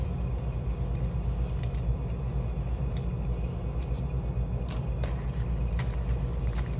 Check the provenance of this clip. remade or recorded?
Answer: recorded